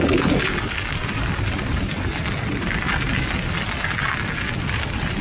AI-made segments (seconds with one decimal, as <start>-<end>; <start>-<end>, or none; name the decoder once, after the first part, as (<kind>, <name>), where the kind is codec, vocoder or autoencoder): none